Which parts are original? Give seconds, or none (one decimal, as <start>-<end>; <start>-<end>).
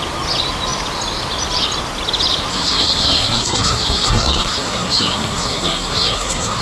0.0-2.5